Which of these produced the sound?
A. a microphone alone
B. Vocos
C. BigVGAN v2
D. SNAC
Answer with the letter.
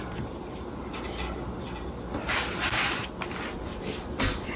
A